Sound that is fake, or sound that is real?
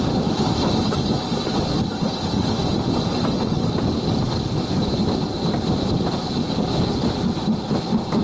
fake